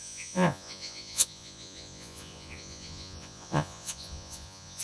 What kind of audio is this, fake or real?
fake